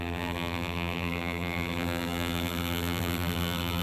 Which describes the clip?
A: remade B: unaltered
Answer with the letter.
A